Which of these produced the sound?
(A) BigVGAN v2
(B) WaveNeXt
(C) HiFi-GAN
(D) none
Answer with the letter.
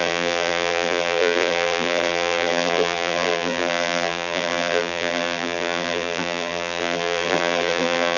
A